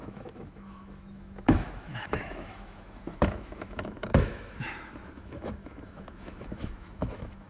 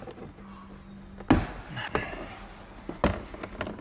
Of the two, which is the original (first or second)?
second